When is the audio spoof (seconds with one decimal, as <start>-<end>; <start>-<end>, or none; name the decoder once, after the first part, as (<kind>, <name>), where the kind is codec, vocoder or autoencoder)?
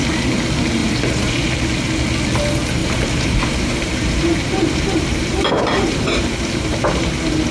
0.8-1.3 (vocoder, BigVGAN v2); 2.8-7.1